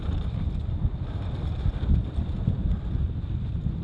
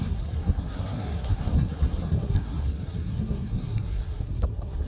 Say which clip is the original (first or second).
first